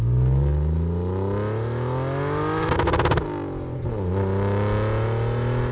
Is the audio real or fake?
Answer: real